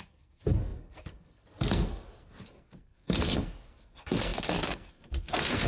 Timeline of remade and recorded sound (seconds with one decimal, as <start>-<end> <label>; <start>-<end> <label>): 0.0-5.7 remade